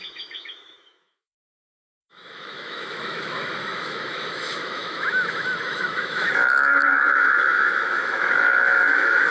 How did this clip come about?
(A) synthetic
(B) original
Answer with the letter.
A